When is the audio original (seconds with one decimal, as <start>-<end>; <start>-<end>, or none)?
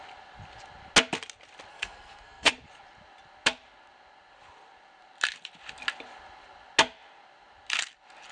0.0-1.7; 2.5-8.3